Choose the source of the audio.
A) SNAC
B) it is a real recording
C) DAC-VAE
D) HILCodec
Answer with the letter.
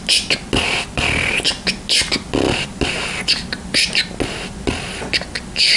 B